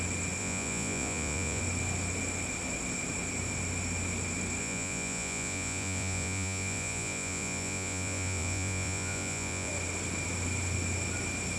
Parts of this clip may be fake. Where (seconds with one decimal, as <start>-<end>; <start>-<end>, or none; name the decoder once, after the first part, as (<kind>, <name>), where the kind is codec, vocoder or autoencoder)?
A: 0.4-1.6 (vocoder, Vocos); 4.6-9.7